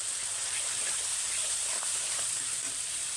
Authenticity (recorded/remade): remade